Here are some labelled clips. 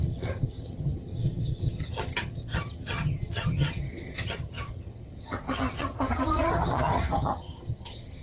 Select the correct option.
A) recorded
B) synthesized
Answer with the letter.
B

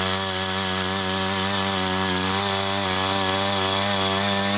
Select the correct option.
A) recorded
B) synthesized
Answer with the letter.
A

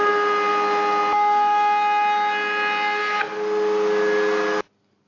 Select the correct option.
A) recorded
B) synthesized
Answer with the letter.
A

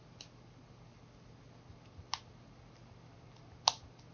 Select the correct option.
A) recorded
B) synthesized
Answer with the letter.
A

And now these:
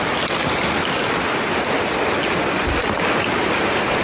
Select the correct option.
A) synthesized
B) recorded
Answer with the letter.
B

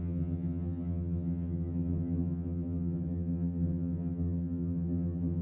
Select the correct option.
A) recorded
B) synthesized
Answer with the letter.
B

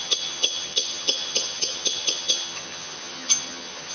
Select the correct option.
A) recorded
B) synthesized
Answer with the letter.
B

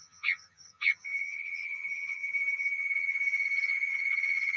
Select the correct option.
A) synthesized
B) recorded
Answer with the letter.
A